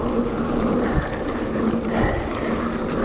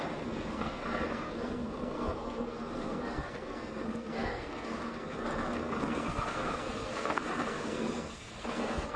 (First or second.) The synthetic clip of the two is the second